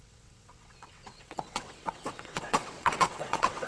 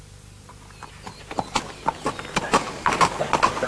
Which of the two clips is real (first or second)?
second